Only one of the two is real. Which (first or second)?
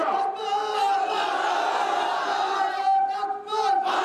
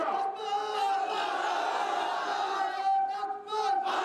second